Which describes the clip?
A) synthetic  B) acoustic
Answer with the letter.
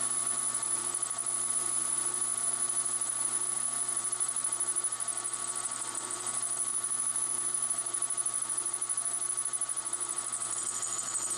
A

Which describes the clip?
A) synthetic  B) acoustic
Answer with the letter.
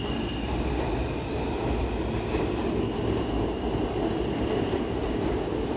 B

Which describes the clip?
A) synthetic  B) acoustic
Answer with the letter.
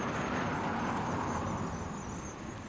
B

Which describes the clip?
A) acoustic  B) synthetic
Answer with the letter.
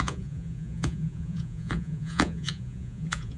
B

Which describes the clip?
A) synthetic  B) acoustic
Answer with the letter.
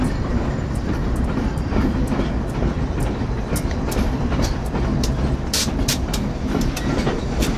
A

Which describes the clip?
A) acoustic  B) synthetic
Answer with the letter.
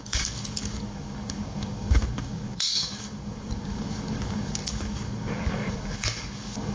B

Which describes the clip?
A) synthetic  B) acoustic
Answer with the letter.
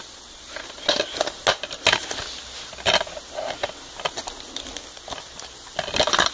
B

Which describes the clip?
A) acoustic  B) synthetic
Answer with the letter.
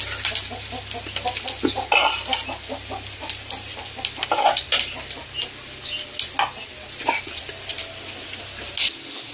A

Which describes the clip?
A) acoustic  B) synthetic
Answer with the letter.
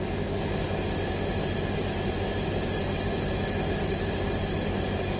A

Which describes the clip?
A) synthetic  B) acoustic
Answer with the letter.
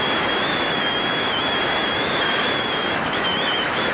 A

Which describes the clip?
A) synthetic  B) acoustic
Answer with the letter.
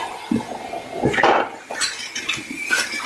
B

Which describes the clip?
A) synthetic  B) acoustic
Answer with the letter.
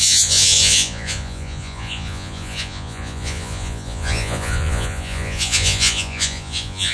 A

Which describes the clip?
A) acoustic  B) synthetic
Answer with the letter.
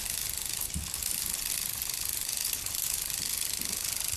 A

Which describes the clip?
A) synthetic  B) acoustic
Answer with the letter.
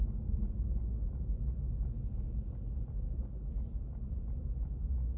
B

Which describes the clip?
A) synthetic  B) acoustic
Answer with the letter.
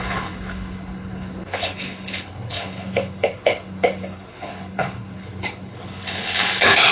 A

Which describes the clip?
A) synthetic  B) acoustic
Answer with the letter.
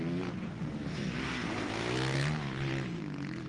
B